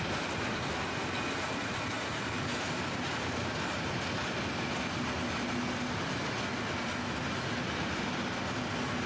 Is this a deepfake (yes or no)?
no